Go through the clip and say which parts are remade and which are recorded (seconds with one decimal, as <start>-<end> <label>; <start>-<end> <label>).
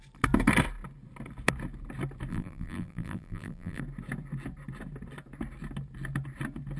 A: 0.0-2.3 recorded; 2.3-3.8 remade; 3.8-6.8 recorded